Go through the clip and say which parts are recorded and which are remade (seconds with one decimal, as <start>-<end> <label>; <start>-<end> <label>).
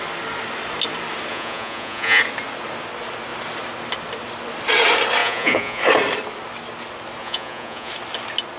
0.0-1.3 recorded; 1.3-2.2 remade; 2.2-5.2 recorded; 5.2-5.8 remade; 5.8-7.2 recorded; 7.2-7.9 remade; 7.9-8.6 recorded